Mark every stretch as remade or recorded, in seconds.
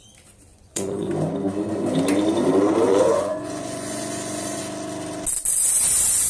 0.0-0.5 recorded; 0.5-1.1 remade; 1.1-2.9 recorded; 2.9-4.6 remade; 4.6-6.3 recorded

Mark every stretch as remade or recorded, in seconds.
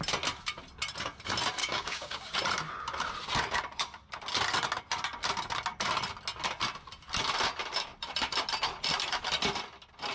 0.0-1.6 recorded; 1.6-2.3 remade; 2.3-10.1 recorded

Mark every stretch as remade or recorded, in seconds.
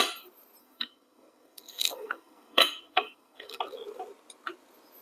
0.0-0.6 recorded; 0.6-3.6 remade; 3.6-5.0 recorded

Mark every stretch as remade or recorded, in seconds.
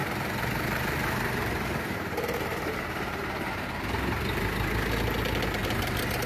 0.0-3.8 remade; 3.8-5.6 recorded; 5.6-6.3 remade